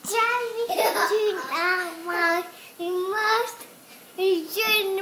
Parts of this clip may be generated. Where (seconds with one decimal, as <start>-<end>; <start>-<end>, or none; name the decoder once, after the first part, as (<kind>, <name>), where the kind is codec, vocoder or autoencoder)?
2.0-2.8 (vocoder, BigVGAN v2)

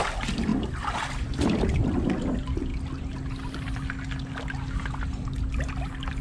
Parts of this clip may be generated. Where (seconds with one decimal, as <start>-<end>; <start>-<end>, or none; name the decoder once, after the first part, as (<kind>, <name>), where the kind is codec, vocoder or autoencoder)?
none

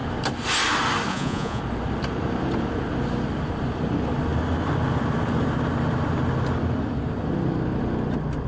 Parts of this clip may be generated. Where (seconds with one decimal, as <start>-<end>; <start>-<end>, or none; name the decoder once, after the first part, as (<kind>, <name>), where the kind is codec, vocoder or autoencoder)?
1.1-1.6 (vocoder, Vocos)

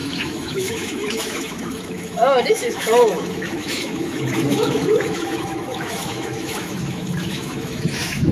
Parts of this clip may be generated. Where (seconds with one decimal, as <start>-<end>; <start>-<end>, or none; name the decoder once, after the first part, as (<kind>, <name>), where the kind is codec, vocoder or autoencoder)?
0.0-8.3 (autoencoder, DAC-VAE)

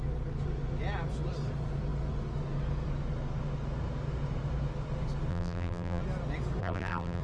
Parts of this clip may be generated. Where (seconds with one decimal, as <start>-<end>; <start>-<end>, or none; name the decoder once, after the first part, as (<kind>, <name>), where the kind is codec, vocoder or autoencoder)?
5.3-6.0 (vocoder, BigVGAN v2); 6.6-7.2

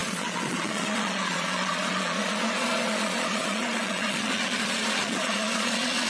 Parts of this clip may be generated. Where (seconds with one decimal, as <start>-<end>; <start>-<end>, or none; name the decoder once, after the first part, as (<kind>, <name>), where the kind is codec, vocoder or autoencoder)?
0.0-6.1 (vocoder, Vocos)